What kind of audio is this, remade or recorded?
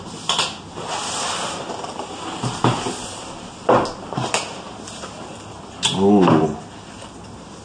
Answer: recorded